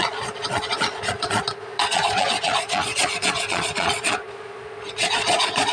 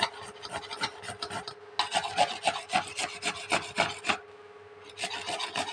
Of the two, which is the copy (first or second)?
first